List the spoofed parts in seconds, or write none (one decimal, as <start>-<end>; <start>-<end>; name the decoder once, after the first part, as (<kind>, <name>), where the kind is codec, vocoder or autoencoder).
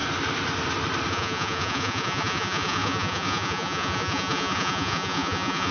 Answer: 1.1-5.7 (vocoder, Vocos)